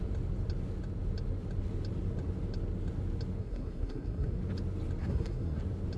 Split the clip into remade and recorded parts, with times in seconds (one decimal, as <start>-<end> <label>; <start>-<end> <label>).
0.0-3.4 recorded; 3.4-4.4 remade; 4.4-5.0 recorded; 5.0-5.6 remade; 5.6-6.0 recorded